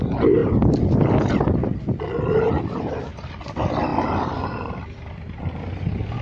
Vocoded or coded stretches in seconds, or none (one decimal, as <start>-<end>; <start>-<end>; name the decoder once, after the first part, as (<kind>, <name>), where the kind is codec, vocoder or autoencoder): none